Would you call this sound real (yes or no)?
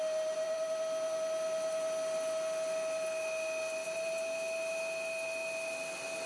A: yes